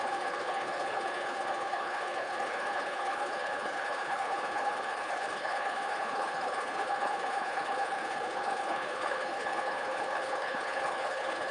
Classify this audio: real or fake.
fake